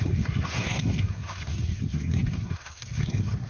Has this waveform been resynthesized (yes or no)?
yes